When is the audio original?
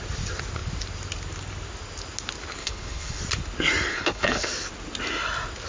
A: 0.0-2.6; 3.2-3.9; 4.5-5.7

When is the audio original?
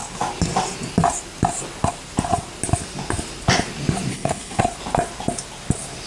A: 0.0-4.1; 4.6-6.1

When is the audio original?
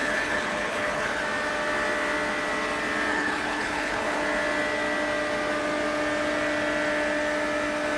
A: 1.2-3.1; 4.2-8.0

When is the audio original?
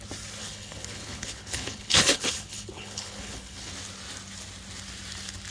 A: 0.0-0.4; 3.7-5.5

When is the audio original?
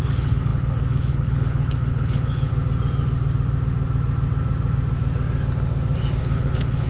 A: 2.5-6.2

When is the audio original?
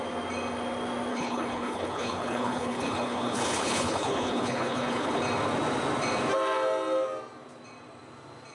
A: 0.0-1.1; 5.2-8.5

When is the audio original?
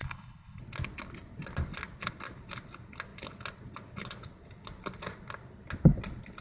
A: 0.6-6.4